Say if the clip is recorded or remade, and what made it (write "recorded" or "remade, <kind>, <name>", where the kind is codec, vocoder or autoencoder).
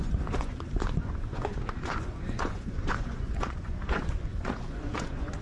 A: remade, vocoder, Vocos